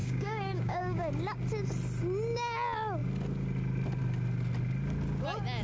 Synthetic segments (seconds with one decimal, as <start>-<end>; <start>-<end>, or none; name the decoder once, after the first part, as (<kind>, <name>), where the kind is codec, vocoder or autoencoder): 0.0-1.1 (codec, DAC)